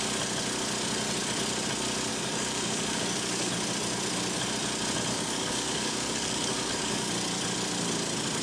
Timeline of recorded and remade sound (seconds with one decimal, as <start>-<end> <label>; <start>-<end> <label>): 0.0-2.1 recorded; 2.1-3.5 remade; 3.5-5.1 recorded; 5.1-7.1 remade; 7.1-8.4 recorded